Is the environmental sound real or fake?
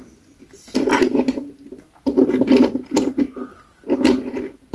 real